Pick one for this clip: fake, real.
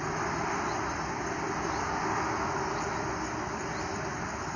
real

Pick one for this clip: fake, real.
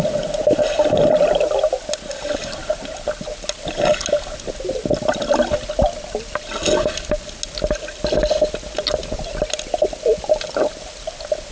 real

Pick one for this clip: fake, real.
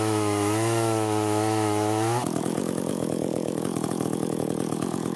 fake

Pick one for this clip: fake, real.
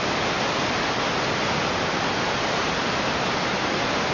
real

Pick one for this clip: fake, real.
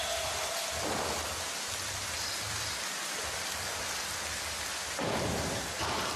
real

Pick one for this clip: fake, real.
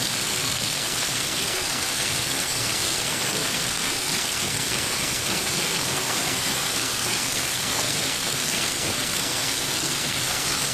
fake